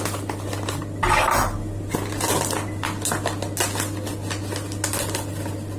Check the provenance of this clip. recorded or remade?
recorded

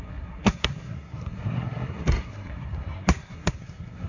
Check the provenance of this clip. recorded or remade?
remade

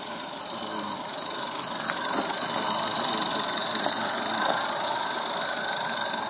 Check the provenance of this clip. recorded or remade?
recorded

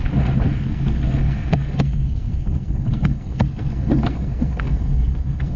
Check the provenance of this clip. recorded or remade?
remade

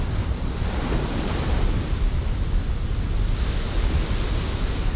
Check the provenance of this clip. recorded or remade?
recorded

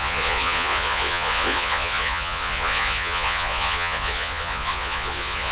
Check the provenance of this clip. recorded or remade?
remade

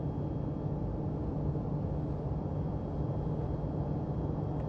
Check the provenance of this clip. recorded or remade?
recorded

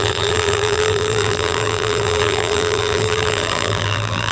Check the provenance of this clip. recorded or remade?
remade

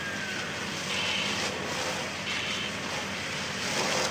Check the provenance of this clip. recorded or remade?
recorded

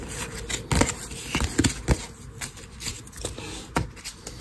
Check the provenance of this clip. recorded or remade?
recorded